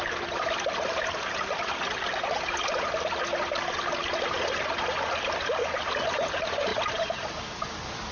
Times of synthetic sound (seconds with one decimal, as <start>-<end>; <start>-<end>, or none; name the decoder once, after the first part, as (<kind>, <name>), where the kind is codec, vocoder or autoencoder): none